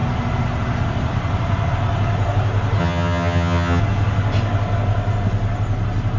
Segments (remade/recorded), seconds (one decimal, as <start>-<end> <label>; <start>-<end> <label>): 0.0-2.8 recorded; 2.8-3.8 remade; 3.8-6.2 recorded